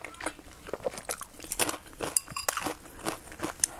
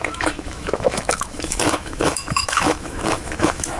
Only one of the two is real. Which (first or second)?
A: first